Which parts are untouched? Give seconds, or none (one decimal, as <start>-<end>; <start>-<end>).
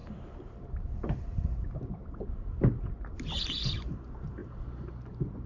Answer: 2.9-4.4